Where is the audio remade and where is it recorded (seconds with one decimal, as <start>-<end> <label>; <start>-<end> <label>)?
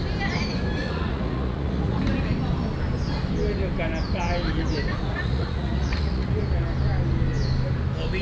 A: 0.0-0.8 recorded; 0.8-2.0 remade; 2.0-4.9 recorded; 4.9-6.4 remade; 6.4-8.2 recorded